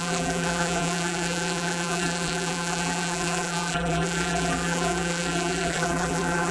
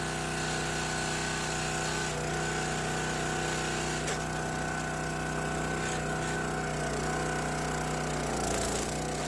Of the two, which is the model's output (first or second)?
first